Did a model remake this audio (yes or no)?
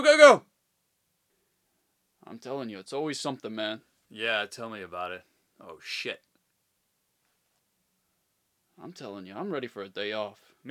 no